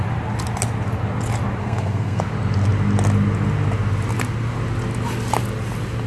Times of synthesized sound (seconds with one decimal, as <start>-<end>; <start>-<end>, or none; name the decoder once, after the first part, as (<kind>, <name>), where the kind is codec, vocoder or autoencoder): 1.6-2.2 (codec, SNAC)